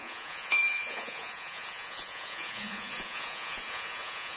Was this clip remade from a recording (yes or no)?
yes